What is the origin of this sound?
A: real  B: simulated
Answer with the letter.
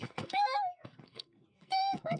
B